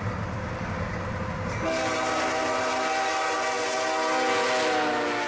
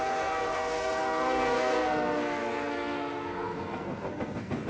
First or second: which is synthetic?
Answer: second